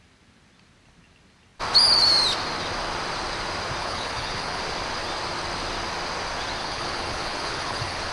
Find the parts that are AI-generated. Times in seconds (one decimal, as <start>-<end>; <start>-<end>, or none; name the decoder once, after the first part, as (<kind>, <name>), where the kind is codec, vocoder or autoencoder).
3.8-4.6 (codec, HILCodec); 6.6-8.1